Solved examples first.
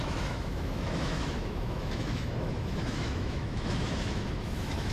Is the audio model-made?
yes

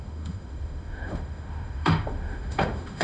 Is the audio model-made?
yes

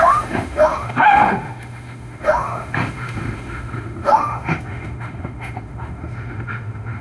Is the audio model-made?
yes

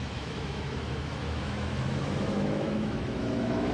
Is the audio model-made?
yes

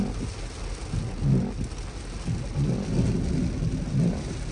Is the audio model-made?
no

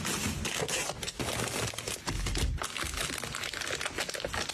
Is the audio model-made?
no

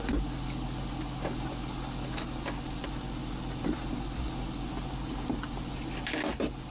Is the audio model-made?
no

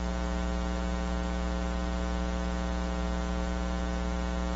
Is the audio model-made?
no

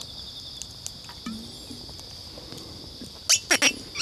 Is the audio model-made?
no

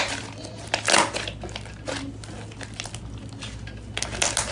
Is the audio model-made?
no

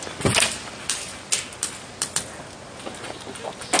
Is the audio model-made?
no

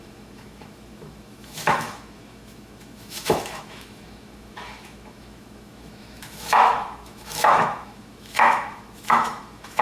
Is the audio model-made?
yes